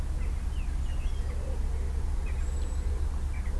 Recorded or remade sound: recorded